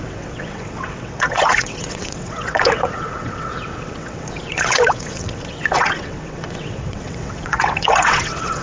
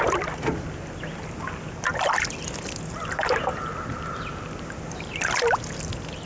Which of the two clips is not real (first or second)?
first